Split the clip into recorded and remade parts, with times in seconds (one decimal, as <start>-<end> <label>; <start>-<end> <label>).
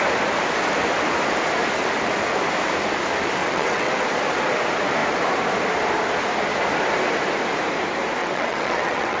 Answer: 0.0-3.4 recorded; 3.4-3.9 remade; 3.9-8.2 recorded; 8.2-9.2 remade